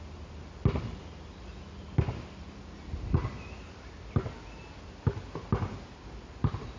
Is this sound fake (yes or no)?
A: no